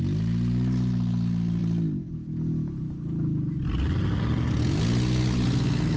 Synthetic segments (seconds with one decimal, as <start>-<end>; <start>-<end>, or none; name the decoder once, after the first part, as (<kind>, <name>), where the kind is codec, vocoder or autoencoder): none